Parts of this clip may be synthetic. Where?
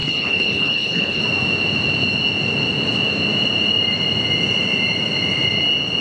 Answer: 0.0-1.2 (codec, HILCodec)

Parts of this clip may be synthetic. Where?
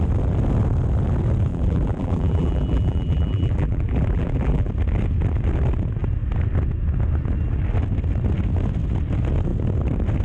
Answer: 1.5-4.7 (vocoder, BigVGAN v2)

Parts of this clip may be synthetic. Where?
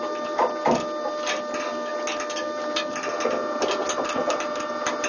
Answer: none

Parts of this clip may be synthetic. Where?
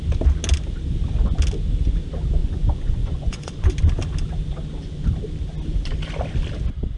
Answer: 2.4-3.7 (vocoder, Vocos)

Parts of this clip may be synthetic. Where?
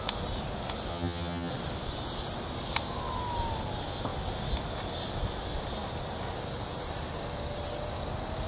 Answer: 0.9-1.5 (vocoder, HiFi-GAN)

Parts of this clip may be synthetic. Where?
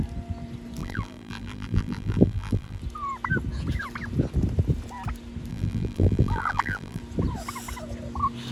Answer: 0.8-2.8 (vocoder, BigVGAN v2); 5.5-7.0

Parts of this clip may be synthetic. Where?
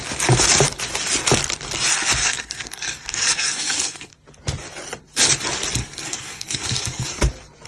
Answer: 2.2-4.1 (codec, SNAC); 5.8-7.2